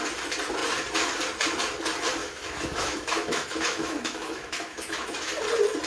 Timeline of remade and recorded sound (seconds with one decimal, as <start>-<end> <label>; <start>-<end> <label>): 0.0-2.2 recorded; 2.2-5.3 remade; 5.3-5.9 recorded